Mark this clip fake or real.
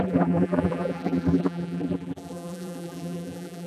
fake